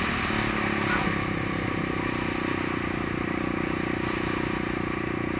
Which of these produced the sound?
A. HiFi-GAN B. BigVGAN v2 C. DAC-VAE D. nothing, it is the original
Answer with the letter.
D